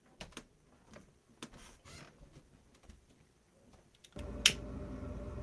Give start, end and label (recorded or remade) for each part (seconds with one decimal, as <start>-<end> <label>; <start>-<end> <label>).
0.0-5.4 recorded